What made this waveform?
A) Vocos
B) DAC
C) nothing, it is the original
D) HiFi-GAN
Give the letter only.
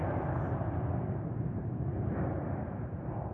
C